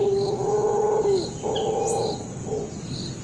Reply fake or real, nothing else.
real